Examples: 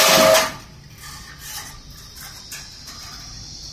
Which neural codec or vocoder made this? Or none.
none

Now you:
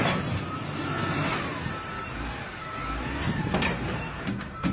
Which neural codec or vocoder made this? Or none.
none